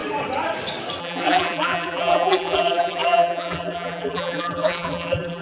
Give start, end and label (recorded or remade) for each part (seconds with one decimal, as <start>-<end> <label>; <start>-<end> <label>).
0.0-1.0 recorded; 1.0-5.4 remade